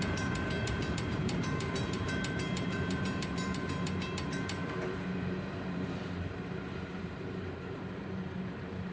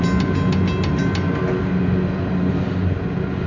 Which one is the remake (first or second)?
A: first